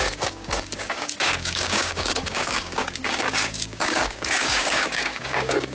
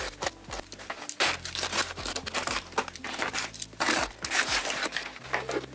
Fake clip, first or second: first